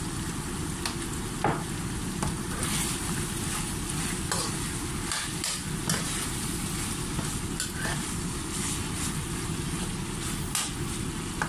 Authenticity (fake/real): fake